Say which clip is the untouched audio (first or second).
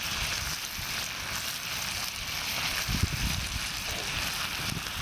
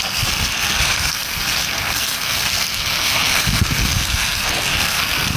first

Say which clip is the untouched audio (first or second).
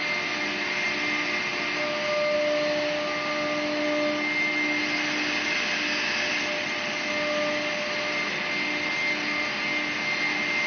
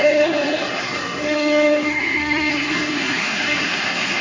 first